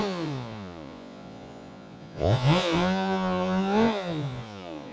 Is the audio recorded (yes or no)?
no